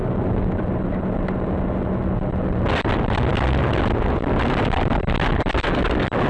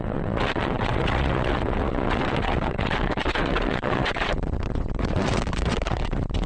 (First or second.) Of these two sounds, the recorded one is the first